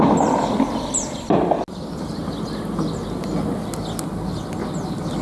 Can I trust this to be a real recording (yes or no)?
yes